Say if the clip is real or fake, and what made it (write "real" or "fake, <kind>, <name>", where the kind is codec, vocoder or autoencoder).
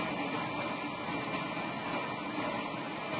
real